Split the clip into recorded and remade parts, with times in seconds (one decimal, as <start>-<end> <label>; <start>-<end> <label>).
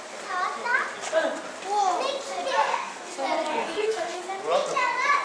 0.0-2.6 recorded; 2.6-3.1 remade; 3.1-3.5 recorded; 3.5-4.2 remade; 4.2-5.2 recorded